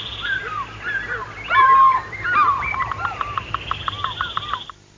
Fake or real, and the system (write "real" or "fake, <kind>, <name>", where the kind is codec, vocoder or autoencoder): real